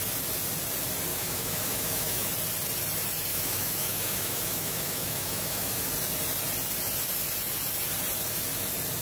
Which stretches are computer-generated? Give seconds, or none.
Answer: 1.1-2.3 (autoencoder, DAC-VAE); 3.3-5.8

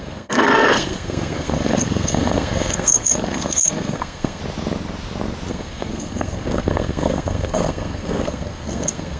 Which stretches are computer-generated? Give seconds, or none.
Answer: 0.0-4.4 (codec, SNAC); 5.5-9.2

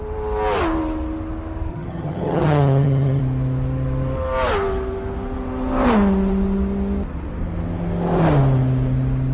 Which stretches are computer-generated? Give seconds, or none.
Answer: 1.7-3.2 (vocoder, HiFi-GAN)